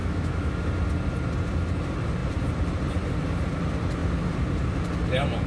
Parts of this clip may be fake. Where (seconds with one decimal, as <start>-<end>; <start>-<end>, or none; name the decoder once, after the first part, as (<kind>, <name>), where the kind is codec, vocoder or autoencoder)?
0.0-0.6 (autoencoder, DAC-VAE)